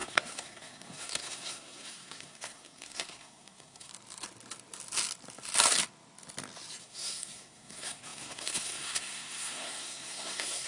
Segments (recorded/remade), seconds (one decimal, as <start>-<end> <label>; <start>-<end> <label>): 0.0-3.9 remade; 3.9-6.8 recorded; 6.8-10.7 remade